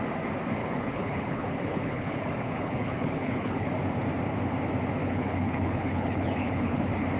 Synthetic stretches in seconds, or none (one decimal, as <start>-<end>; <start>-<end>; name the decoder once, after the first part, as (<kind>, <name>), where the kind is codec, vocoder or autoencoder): 0.6-3.7 (codec, HILCodec); 5.0-6.8